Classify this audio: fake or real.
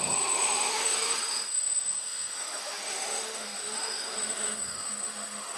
fake